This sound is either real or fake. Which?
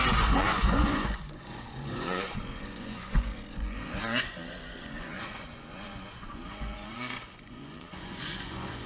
fake